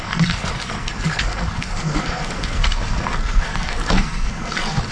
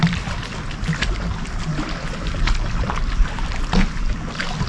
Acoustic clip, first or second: second